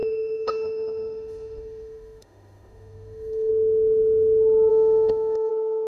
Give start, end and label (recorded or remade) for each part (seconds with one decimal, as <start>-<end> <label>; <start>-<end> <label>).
0.0-3.5 remade; 3.5-4.7 recorded; 4.7-5.5 remade; 5.5-5.9 recorded